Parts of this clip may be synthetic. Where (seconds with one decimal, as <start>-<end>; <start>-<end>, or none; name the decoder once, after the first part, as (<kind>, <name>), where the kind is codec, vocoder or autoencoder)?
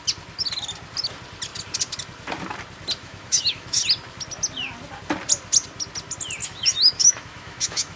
3.0-3.8 (autoencoder, DAC-VAE); 6.4-8.0